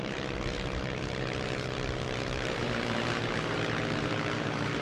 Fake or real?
fake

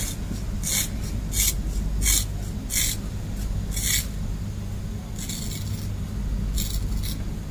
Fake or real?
real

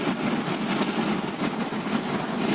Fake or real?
real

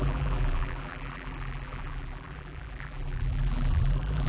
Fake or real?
fake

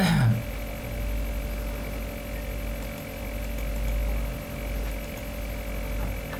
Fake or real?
real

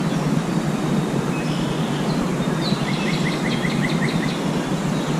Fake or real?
real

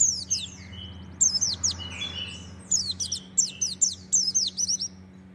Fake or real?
real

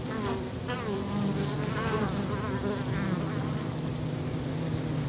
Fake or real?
real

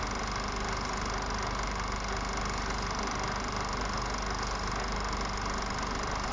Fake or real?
real